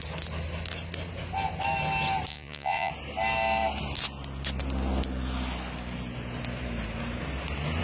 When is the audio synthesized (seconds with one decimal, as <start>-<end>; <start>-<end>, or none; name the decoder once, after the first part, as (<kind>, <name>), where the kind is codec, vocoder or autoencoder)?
2.3-2.9 (vocoder, Vocos)